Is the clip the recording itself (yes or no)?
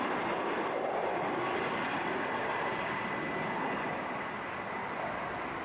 yes